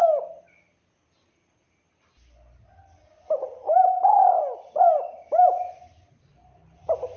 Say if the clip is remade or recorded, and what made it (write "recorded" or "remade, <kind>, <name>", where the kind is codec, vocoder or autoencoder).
recorded